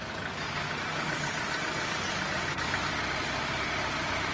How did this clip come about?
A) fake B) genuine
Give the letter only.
B